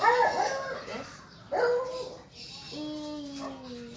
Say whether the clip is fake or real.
real